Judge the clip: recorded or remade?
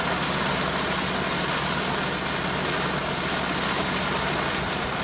recorded